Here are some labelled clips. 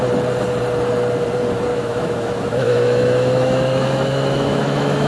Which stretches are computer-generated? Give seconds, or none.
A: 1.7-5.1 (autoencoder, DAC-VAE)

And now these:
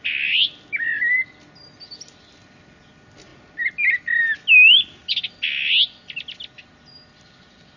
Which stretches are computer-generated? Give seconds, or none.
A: none